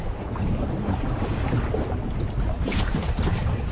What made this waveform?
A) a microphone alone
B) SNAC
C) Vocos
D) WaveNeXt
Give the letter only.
A